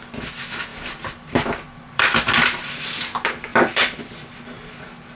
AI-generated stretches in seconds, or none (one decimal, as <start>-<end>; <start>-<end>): 0.7-2.3; 3.5-4.2